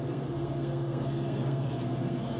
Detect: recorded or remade remade